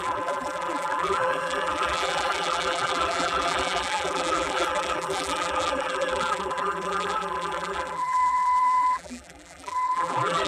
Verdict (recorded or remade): remade